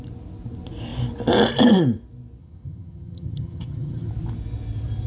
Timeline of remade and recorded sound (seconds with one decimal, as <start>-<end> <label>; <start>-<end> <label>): 0.0-2.4 recorded; 2.4-4.1 remade; 4.1-5.1 recorded